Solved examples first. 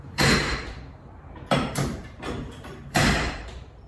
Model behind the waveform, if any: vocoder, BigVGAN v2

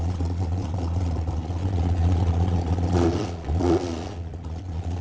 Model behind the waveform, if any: vocoder, Vocos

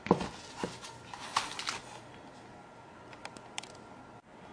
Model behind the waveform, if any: none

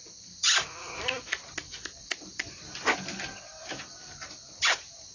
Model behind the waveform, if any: none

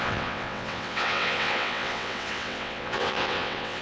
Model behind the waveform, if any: vocoder, WaveNeXt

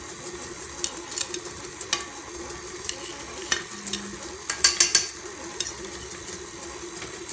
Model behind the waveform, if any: none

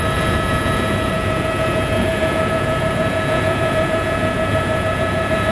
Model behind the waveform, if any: vocoder, Vocos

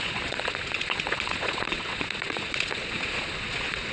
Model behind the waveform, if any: vocoder, Vocos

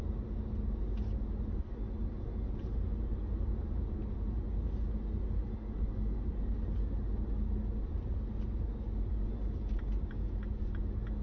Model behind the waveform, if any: none